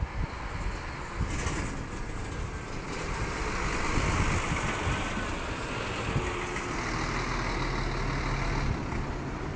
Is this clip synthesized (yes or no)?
no